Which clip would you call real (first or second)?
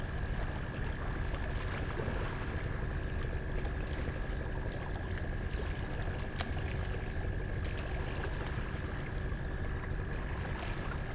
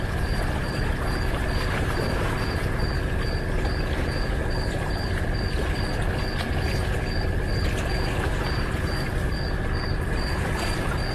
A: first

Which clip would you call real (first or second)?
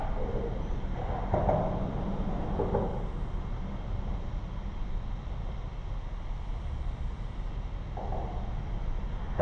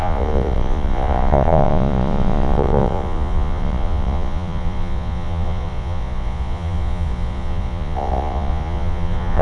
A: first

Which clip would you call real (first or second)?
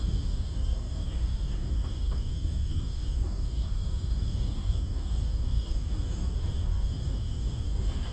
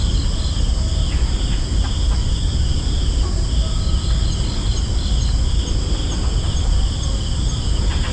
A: second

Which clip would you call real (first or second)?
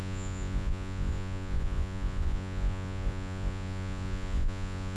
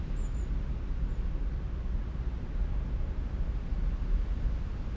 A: second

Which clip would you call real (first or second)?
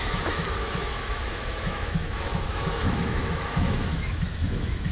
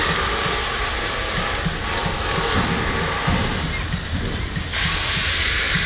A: second